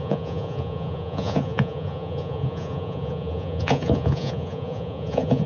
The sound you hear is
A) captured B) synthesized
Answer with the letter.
B